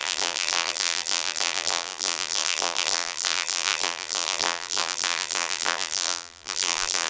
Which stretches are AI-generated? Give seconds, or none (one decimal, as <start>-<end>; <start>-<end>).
0.0-7.1